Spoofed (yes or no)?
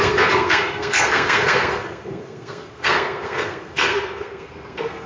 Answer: yes